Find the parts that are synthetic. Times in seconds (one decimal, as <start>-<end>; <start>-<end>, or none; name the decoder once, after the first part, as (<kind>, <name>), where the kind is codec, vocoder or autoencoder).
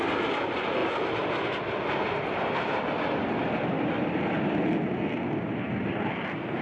none